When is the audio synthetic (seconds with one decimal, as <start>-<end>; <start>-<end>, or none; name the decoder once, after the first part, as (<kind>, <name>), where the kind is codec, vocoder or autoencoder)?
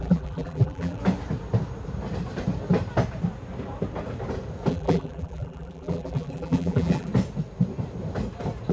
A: 0.0-1.0 (vocoder, BigVGAN v2); 4.7-7.1